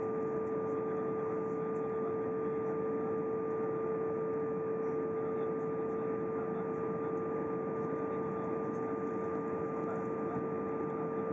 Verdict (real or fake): real